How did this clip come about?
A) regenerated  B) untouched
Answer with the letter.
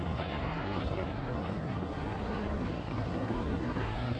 A